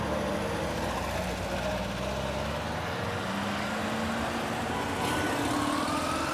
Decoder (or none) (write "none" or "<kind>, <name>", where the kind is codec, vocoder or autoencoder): none